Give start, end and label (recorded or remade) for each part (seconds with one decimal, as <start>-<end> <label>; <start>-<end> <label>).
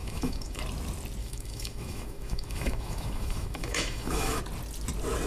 0.0-0.6 remade; 0.6-1.2 recorded; 1.2-4.4 remade; 4.4-5.3 recorded